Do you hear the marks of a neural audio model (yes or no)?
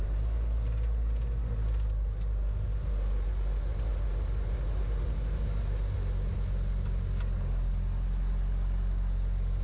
no